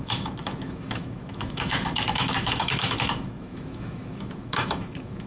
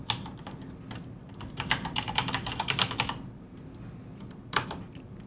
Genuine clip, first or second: second